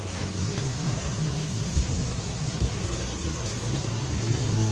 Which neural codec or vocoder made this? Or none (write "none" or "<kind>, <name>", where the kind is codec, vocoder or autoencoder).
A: codec, SNAC